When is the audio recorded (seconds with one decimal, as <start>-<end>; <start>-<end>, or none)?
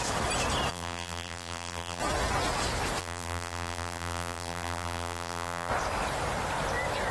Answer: 0.0-0.7; 2.0-3.0; 5.7-7.1